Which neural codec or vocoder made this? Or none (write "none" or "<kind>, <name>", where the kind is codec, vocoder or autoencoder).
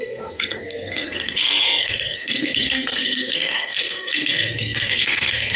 codec, SNAC